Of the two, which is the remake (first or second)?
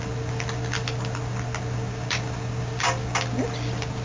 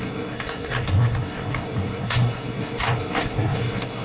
second